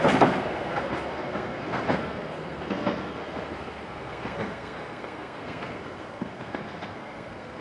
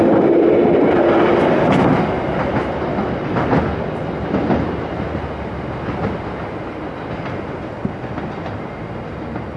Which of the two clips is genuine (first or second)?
second